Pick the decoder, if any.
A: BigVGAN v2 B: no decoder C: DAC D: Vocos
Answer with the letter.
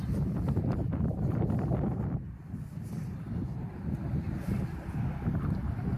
A